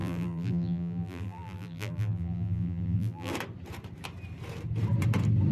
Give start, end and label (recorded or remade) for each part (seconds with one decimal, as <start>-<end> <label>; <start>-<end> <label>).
0.0-3.3 remade; 3.3-5.5 recorded